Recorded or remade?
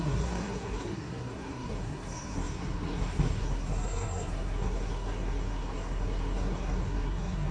remade